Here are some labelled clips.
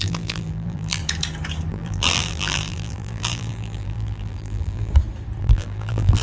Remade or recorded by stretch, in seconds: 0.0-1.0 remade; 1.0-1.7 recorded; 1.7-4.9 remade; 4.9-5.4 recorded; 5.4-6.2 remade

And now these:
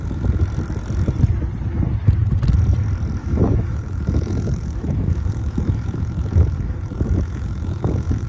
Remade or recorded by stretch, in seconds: 0.0-3.2 recorded; 3.2-8.3 remade

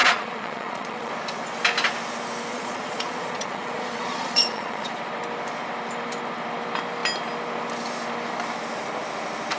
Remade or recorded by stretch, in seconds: 0.0-1.1 remade; 1.1-2.5 recorded; 2.5-4.9 remade; 4.9-9.6 recorded

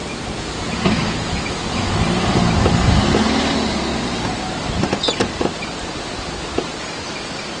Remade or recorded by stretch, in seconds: 0.0-1.9 remade; 1.9-7.6 recorded

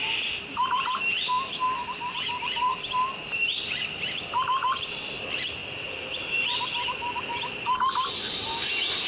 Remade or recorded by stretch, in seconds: 0.0-5.6 remade; 5.6-8.3 recorded; 8.3-9.1 remade